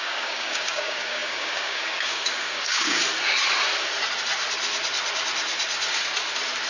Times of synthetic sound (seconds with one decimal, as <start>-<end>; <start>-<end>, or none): 0.0-3.0